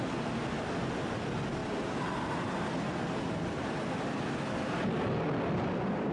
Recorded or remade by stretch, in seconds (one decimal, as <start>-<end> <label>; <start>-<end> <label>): 0.0-6.1 recorded